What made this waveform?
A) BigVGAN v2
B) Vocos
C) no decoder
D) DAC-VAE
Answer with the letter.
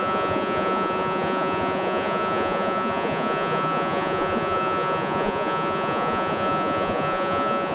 B